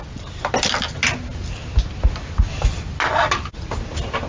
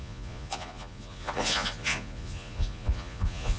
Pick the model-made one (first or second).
second